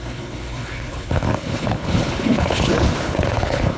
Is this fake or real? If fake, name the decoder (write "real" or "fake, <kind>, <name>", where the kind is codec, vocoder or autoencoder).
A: fake, codec, HILCodec